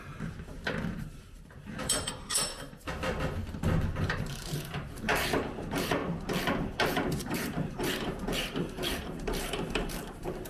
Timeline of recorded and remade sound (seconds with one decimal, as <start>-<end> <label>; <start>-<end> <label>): 0.0-2.5 remade; 2.5-4.0 recorded; 4.0-6.0 remade; 6.0-6.9 recorded; 6.9-10.5 remade

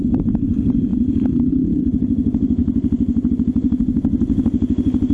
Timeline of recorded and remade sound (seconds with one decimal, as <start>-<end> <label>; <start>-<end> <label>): 0.0-0.9 recorded; 0.9-1.8 remade; 1.8-2.6 recorded; 2.6-3.3 remade; 3.3-5.1 recorded